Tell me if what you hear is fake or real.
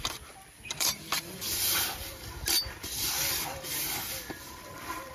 fake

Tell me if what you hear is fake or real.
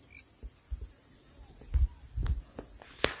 real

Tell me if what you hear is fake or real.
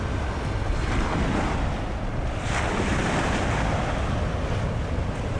real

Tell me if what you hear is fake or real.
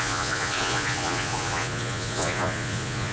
fake